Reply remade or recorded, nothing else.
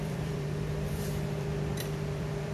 remade